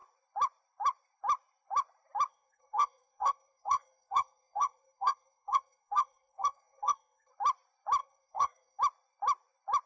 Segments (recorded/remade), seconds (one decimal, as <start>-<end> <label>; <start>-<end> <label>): 0.0-2.3 recorded; 2.3-7.3 remade; 7.3-8.0 recorded; 8.0-8.8 remade; 8.8-9.9 recorded